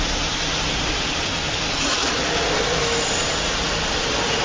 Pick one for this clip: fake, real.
real